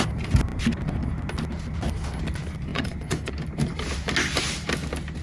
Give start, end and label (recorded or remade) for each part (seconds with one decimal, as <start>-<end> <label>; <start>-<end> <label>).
0.0-2.7 recorded; 2.7-3.3 remade; 3.3-5.2 recorded